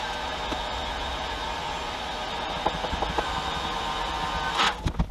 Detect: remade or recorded recorded